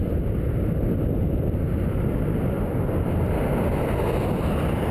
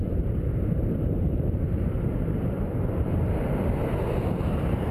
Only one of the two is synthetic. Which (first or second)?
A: second